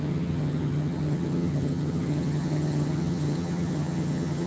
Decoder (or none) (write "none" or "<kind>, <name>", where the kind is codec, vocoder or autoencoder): vocoder, HiFi-GAN